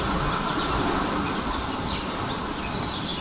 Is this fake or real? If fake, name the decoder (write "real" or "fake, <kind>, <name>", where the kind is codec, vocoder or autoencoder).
real